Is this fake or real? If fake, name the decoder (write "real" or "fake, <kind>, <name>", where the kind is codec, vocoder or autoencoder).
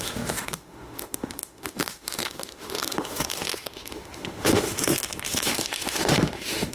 fake, autoencoder, DAC-VAE